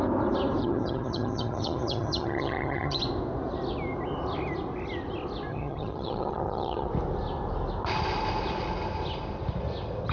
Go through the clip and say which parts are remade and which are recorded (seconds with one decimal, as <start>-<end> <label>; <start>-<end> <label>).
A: 0.0-0.6 recorded; 0.6-3.0 remade; 3.0-5.5 recorded; 5.5-6.9 remade; 6.9-10.1 recorded